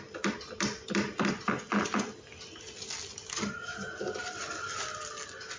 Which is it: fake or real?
real